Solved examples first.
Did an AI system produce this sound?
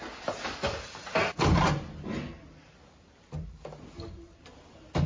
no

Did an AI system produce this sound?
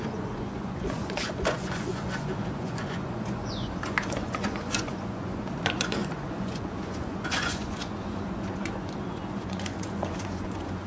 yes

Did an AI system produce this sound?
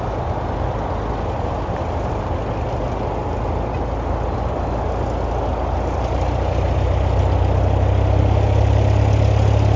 no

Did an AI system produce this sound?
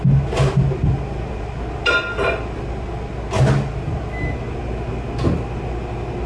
no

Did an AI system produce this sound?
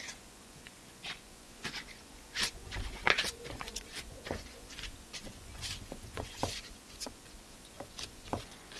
yes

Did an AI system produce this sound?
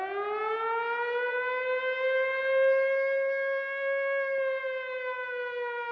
no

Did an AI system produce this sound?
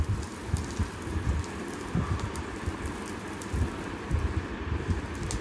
no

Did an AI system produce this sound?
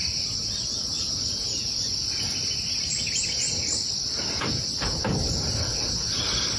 no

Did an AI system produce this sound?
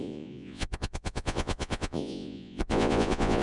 yes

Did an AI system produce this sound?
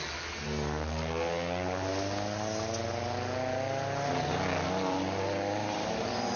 no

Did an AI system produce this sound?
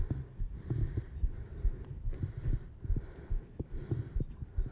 no